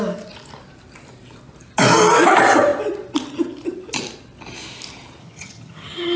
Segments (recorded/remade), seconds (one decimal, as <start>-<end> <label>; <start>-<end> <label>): 0.0-5.2 recorded; 5.2-6.2 remade